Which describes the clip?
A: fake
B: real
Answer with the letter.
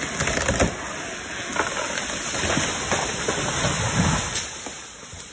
B